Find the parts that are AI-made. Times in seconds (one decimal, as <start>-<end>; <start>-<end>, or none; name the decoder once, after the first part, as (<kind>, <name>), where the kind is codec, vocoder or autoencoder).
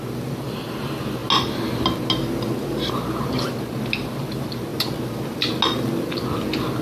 none